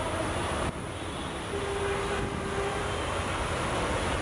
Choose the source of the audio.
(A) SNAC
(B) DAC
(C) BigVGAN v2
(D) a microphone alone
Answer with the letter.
D